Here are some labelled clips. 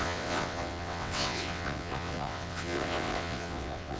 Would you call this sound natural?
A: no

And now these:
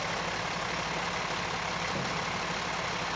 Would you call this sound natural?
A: yes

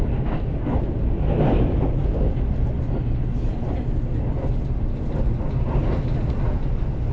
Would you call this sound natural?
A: yes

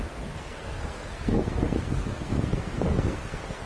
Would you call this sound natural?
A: no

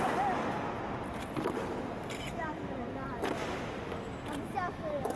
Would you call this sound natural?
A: yes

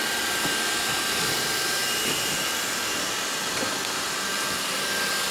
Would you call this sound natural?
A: no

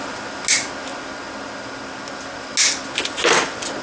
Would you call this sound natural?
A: yes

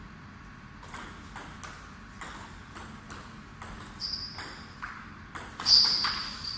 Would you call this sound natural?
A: yes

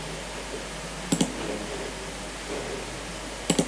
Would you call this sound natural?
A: yes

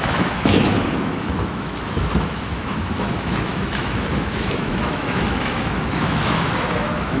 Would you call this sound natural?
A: no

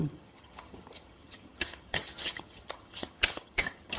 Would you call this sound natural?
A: no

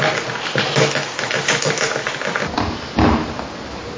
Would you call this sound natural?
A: yes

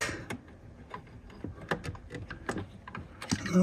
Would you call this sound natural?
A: yes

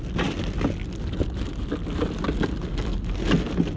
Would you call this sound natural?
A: yes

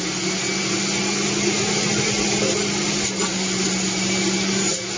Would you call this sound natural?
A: yes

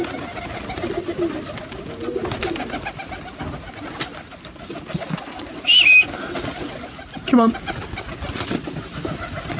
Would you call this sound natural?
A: yes